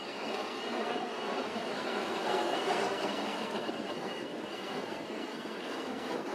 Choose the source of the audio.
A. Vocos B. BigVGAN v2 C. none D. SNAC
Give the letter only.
D